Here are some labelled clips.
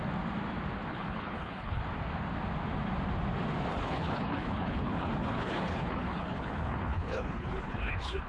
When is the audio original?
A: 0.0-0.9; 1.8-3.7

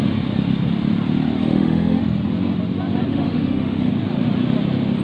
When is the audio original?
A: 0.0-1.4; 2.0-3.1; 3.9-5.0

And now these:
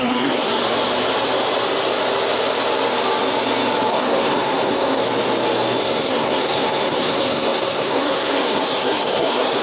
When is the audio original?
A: 0.6-3.9; 5.0-5.8